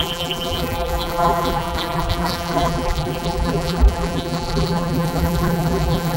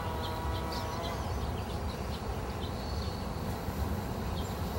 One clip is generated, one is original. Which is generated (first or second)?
first